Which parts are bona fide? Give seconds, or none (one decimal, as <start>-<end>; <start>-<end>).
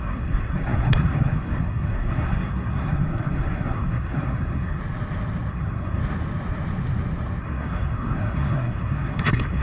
4.8-5.5; 6.0-7.4